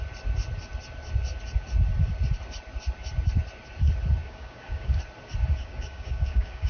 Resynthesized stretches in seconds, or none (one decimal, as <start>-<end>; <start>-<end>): 4.2-5.0; 5.6-6.7